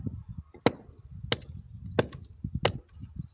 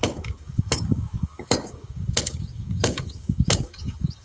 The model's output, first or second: second